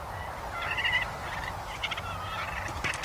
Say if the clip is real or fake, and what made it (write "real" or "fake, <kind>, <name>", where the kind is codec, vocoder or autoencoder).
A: real